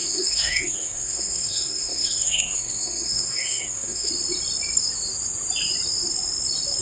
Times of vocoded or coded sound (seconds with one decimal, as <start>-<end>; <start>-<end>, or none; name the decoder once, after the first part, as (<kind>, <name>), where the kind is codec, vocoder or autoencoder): 0.0-4.1 (codec, SNAC)